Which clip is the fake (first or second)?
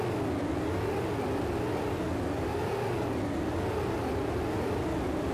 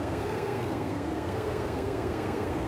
second